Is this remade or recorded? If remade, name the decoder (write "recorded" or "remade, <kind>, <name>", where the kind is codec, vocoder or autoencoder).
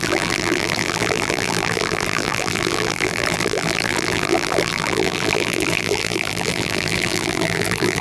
remade, vocoder, BigVGAN v2